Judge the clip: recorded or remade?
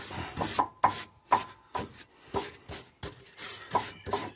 recorded